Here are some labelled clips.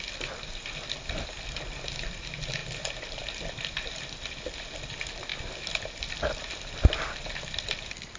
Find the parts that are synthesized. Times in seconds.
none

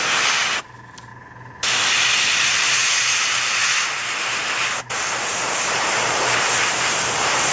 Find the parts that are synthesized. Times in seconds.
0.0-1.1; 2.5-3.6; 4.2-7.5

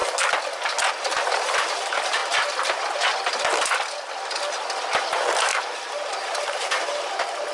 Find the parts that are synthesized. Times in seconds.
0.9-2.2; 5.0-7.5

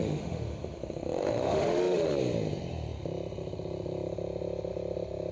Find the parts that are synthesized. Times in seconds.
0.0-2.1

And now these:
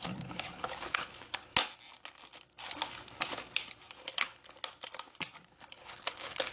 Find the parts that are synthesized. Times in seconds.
0.0-1.5; 4.0-4.4; 5.5-6.5

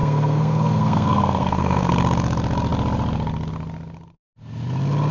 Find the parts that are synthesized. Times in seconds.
0.0-1.9